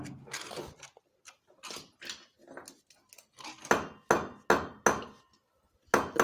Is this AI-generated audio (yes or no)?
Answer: no